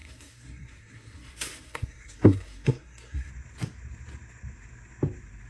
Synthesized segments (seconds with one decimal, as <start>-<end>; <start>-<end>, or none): 0.0-3.3